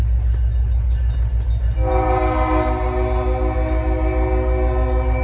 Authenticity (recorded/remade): recorded